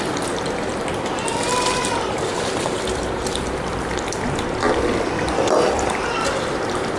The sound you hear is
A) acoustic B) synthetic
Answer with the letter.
B